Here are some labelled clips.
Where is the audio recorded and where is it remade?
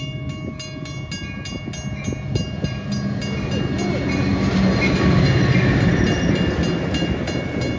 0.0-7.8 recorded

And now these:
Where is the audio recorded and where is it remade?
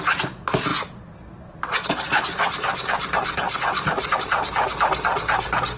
0.0-5.8 recorded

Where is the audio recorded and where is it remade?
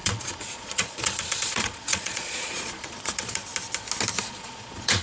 0.0-3.5 remade; 3.5-4.2 recorded; 4.2-5.0 remade